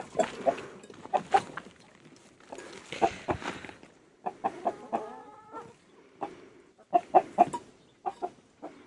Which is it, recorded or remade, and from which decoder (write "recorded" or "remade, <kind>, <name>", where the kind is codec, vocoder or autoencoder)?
recorded